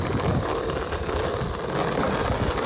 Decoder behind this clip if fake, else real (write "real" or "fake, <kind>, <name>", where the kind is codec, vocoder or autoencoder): real